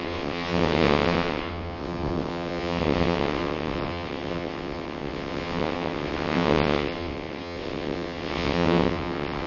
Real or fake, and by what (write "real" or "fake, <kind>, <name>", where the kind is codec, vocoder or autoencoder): fake, vocoder, WaveNeXt